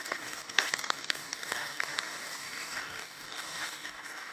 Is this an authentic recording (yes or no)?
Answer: no